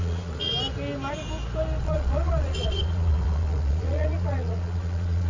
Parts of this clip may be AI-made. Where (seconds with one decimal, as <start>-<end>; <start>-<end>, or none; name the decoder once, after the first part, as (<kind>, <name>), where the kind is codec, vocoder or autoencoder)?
0.0-0.5 (vocoder, Vocos); 1.8-5.3